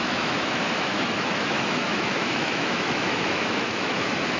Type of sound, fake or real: fake